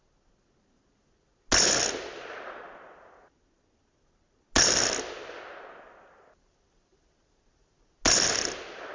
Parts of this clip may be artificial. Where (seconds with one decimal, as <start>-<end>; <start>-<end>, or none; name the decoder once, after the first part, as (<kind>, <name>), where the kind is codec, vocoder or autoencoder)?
none